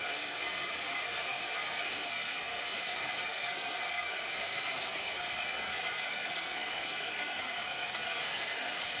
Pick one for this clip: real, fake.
fake